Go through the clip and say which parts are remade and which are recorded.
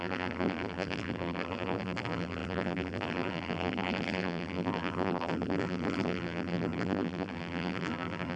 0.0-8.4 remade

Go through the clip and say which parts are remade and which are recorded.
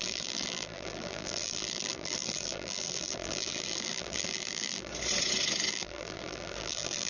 0.0-4.9 remade; 4.9-5.7 recorded; 5.7-7.1 remade